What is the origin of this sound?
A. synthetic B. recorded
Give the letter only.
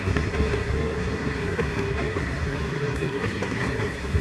A